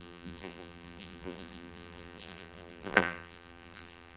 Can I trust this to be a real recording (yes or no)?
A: no